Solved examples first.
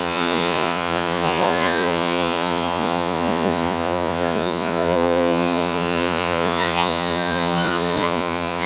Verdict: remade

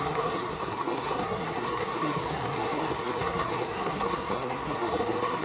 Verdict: remade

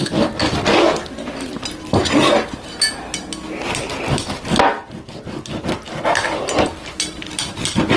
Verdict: recorded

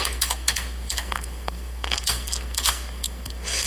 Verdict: remade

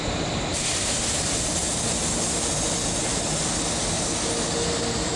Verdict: recorded